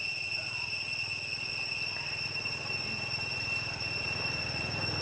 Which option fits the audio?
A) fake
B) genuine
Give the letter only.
B